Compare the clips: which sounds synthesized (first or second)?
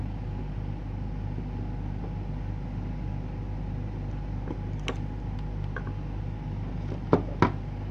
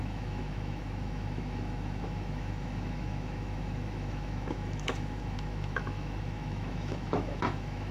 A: second